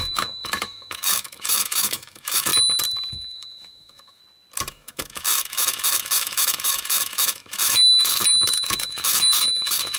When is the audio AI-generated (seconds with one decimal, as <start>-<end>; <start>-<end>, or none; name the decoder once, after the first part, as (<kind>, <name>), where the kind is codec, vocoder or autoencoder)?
0.0-2.5 (autoencoder, DAC-VAE); 3.1-4.2; 4.7-10.0